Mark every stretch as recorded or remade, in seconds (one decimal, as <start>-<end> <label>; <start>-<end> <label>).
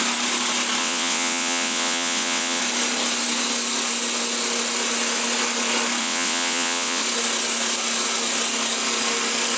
0.0-0.8 recorded; 0.8-2.6 remade; 2.6-6.0 recorded; 6.0-7.0 remade; 7.0-9.6 recorded